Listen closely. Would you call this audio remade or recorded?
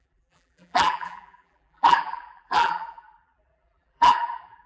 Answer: remade